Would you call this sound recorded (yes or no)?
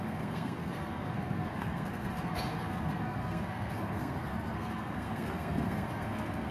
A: no